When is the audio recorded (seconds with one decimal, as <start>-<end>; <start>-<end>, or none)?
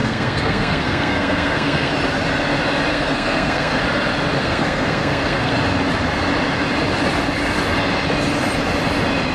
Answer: 1.9-2.9; 3.8-4.4; 5.5-9.3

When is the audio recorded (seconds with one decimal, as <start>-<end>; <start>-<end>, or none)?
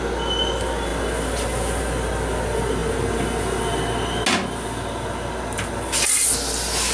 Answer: 0.0-6.9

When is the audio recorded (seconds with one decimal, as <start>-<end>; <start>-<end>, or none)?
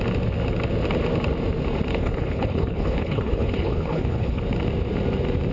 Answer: 0.0-1.9; 4.4-5.5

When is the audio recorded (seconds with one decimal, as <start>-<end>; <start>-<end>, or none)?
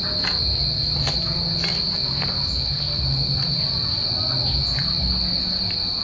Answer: 0.0-6.0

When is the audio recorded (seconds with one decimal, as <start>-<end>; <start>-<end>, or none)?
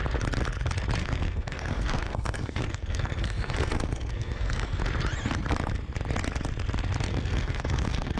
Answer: 0.0-1.0; 4.8-7.1